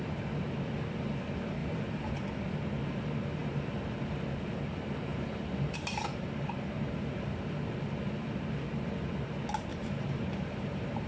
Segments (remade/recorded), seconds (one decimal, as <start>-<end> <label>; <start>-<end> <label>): 0.0-1.6 recorded; 1.6-2.1 remade; 2.1-5.1 recorded; 5.1-7.1 remade; 7.1-9.7 recorded; 9.7-11.1 remade